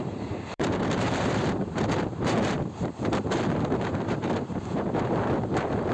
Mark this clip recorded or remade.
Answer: remade